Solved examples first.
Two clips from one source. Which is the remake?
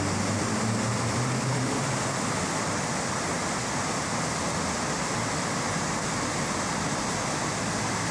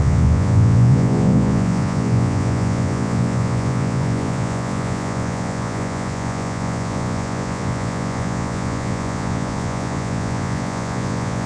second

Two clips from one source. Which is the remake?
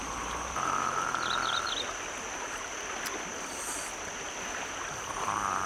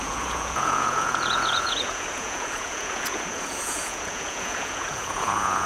second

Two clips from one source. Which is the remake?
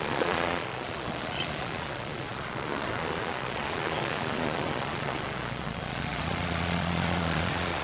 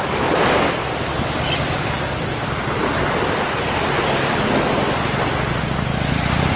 first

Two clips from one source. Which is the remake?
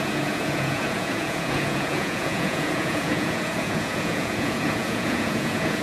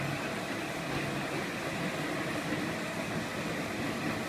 first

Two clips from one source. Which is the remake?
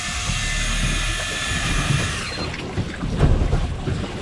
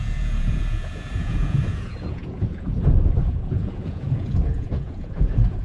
second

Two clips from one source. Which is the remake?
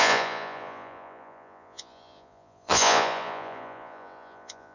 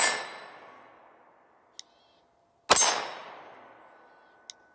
first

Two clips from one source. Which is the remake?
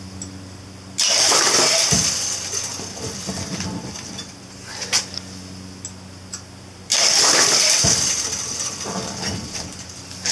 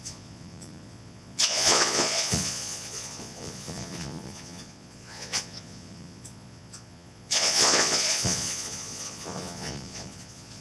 second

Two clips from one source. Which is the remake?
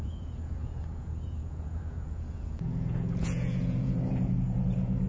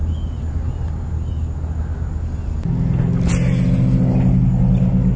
first